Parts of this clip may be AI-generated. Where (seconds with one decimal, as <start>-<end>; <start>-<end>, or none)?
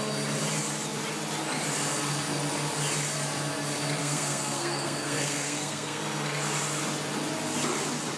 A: 4.0-6.0